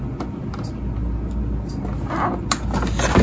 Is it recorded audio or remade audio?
recorded